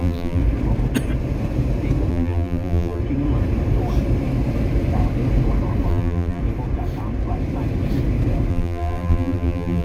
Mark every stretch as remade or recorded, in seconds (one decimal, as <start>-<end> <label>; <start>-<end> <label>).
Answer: 0.0-0.4 remade; 0.4-2.1 recorded; 2.1-3.0 remade; 3.0-5.9 recorded; 5.9-6.4 remade; 6.4-8.5 recorded; 8.5-9.8 remade

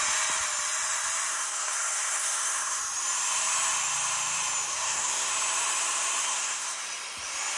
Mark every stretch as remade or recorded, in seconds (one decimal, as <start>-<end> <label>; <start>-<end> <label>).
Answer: 0.0-1.3 recorded; 1.3-2.8 remade; 2.8-4.7 recorded; 4.7-5.3 remade; 5.3-6.2 recorded; 6.2-6.8 remade; 6.8-7.6 recorded

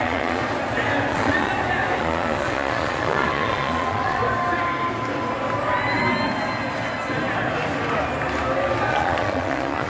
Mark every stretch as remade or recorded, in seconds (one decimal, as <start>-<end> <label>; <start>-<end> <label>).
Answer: 0.0-0.4 remade; 0.4-1.1 recorded; 1.1-1.5 remade; 1.5-2.0 recorded; 2.0-4.2 remade; 4.2-8.9 recorded; 8.9-9.9 remade

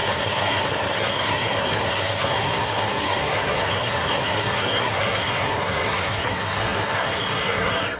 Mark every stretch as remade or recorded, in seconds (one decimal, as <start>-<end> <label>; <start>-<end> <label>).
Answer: 0.0-8.0 remade

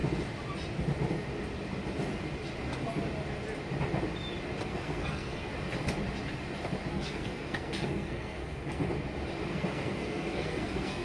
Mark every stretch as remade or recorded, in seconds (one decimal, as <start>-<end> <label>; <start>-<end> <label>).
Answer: 0.0-4.6 recorded; 4.6-5.5 remade; 5.5-6.9 recorded; 6.9-8.8 remade; 8.8-9.5 recorded; 9.5-11.0 remade